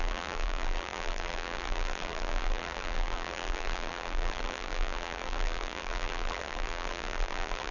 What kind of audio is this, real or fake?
fake